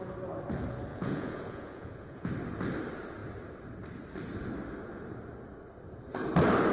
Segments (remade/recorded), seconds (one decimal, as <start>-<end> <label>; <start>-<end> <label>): 0.0-0.9 recorded; 0.9-2.3 remade; 2.3-6.7 recorded